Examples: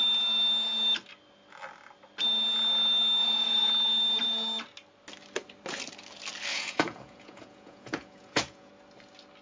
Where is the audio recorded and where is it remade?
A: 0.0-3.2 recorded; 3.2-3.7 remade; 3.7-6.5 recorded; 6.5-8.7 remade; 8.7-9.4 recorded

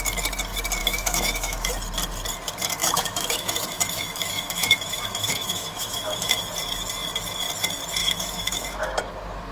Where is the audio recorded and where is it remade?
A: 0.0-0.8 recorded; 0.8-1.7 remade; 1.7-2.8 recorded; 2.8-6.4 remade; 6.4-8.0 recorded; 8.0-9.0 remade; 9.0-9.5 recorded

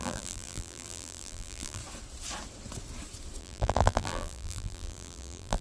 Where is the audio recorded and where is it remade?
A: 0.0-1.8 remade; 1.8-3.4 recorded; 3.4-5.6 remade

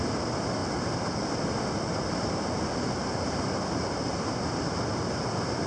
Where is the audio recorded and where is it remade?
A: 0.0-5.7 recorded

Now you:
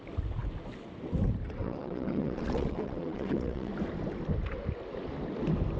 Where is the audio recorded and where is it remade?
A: 0.0-1.6 recorded; 1.6-3.7 remade; 3.7-5.8 recorded

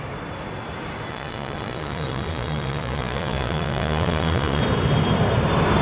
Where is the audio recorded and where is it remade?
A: 0.0-1.1 recorded; 1.1-4.6 remade; 4.6-5.8 recorded

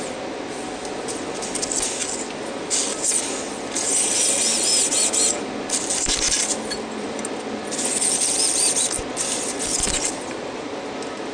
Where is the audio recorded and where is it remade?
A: 0.0-11.3 recorded